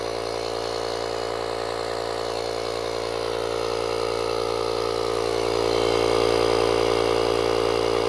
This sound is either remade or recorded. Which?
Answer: recorded